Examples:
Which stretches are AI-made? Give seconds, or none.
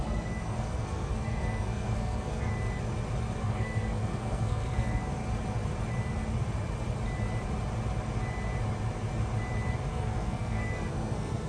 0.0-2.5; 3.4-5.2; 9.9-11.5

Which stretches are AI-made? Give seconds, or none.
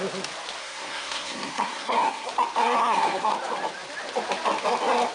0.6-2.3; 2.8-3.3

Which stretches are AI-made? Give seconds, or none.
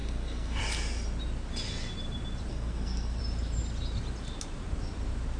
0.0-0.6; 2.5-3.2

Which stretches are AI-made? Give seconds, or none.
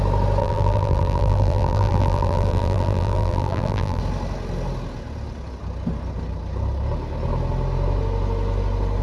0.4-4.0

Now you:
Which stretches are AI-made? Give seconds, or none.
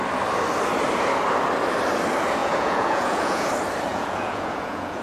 2.4-3.5; 3.9-5.0